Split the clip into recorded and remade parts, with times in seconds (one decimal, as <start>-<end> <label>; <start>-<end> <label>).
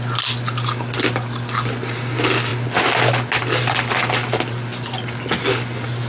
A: 0.0-6.1 recorded